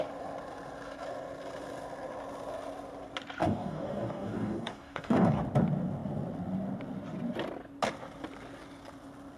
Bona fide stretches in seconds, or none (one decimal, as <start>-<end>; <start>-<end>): 0.0-3.4; 5.4-9.4